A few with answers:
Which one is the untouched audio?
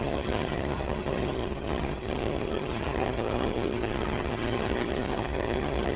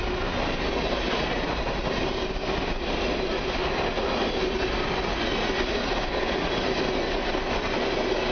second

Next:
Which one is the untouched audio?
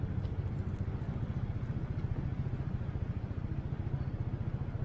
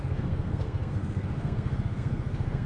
first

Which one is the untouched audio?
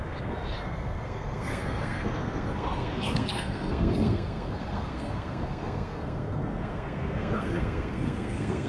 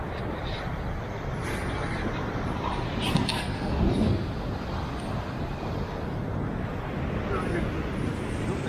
second